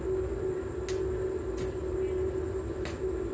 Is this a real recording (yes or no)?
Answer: yes